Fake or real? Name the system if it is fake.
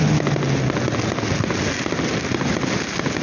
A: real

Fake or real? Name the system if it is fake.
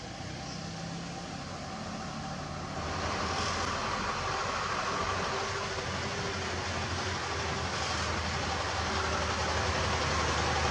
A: real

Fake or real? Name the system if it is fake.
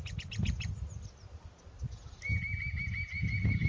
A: real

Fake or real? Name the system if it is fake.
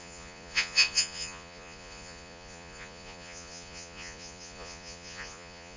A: fake, vocoder, Vocos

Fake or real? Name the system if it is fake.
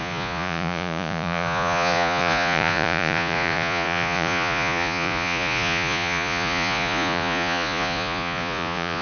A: fake, vocoder, Vocos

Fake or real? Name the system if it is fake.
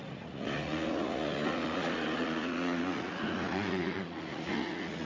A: fake, vocoder, Vocos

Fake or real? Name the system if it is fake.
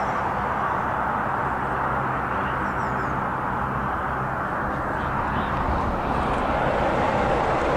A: real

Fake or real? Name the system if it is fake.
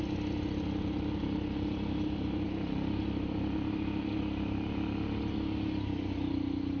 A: real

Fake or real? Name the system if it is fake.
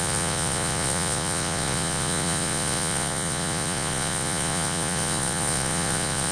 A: fake, vocoder, Vocos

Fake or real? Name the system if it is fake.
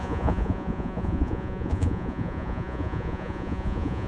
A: fake, vocoder, Vocos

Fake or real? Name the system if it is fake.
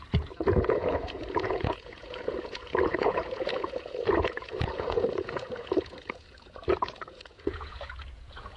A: fake, vocoder, Vocos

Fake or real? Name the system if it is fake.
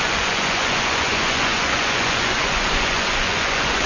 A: fake, vocoder, Vocos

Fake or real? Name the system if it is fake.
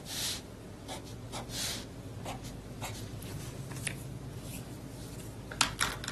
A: real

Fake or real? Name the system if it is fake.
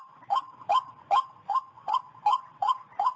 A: fake, vocoder, Vocos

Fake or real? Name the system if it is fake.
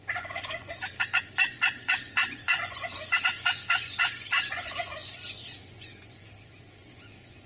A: fake, vocoder, Vocos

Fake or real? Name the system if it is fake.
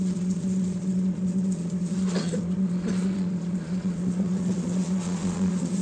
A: fake, vocoder, Vocos